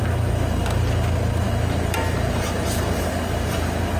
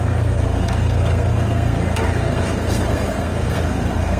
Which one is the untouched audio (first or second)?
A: first